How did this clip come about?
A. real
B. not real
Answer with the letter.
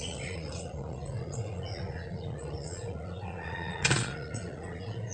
B